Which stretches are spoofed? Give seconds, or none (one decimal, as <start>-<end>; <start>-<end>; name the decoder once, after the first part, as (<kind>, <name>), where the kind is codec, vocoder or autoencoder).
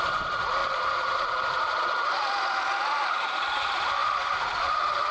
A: 0.0-5.1 (vocoder, BigVGAN v2)